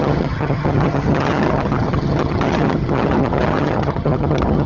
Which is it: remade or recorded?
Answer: remade